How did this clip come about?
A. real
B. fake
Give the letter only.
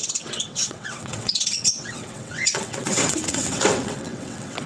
B